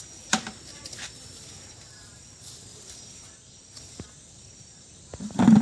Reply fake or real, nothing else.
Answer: fake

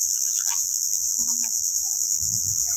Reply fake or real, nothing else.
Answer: fake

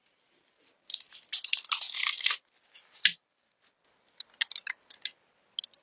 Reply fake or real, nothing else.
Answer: real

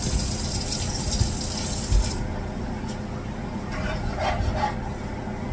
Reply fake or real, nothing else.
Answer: real